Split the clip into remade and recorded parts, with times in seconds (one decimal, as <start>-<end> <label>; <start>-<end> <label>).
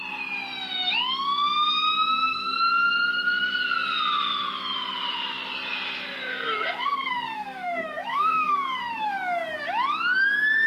0.0-2.1 recorded; 2.1-2.6 remade; 2.6-6.3 recorded; 6.3-9.1 remade; 9.1-10.7 recorded